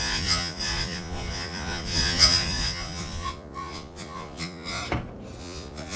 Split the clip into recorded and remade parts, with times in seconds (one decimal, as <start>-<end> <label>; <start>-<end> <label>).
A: 0.0-4.8 remade; 4.8-5.4 recorded; 5.4-6.0 remade